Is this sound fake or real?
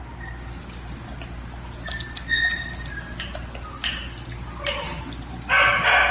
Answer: real